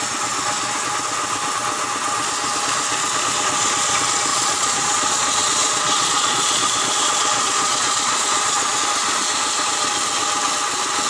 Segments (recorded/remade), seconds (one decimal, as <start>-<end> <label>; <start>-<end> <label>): 0.0-4.3 recorded; 4.3-8.8 remade; 8.8-11.1 recorded